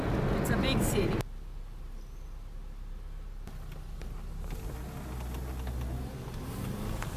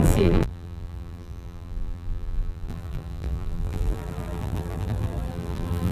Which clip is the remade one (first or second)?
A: second